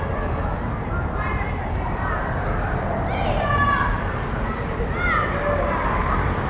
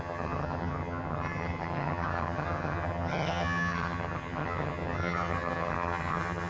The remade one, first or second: second